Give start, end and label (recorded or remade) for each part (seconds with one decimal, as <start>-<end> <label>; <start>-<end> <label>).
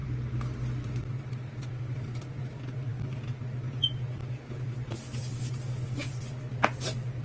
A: 0.0-7.2 recorded